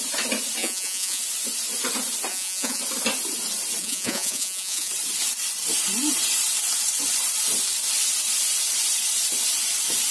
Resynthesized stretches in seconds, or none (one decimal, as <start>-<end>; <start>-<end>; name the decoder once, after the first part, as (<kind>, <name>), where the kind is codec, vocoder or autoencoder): 0.6-1.2 (vocoder, Vocos); 2.3-2.8; 3.8-4.9

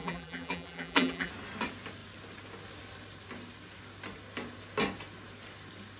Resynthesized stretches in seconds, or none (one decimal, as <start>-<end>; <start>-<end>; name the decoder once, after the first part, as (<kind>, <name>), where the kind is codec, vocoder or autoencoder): 0.0-1.3 (vocoder, BigVGAN v2)

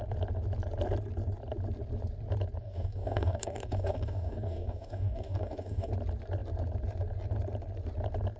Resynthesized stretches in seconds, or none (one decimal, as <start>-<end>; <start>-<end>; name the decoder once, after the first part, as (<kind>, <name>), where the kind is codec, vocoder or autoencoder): 2.6-5.9 (codec, DAC)

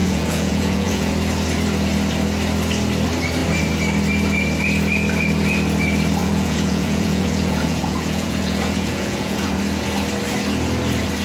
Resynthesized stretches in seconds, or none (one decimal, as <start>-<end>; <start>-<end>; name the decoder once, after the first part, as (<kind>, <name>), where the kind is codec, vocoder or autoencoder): 0.0-1.1 (vocoder, Vocos); 6.2-9.6